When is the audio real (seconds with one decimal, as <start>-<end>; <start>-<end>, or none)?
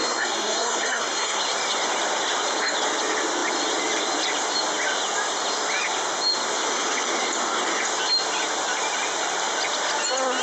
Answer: 1.4-10.4